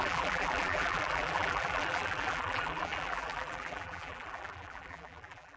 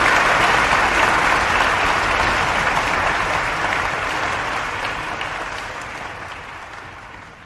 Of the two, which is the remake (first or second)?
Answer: first